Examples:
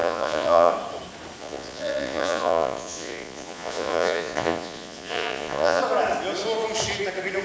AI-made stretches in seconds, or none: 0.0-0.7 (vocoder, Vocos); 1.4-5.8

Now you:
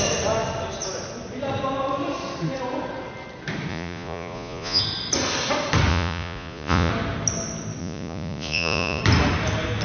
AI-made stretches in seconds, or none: 3.7-4.8 (vocoder, Vocos); 5.9-6.9; 7.8-9.0

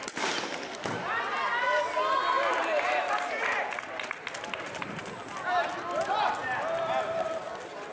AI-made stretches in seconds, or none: 2.5-5.0 (vocoder, BigVGAN v2)

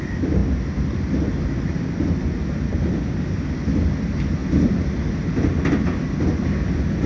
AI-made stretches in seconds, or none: none